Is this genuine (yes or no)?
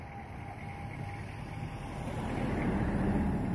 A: yes